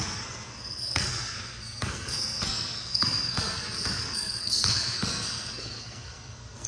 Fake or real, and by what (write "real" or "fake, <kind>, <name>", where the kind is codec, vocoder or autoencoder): fake, codec, SNAC